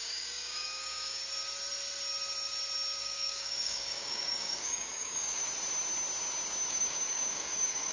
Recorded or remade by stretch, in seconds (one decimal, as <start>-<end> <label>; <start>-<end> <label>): 0.0-1.2 remade; 1.2-3.0 recorded; 3.0-5.4 remade; 5.4-6.7 recorded; 6.7-7.9 remade